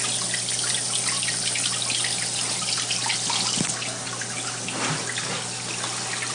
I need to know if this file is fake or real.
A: real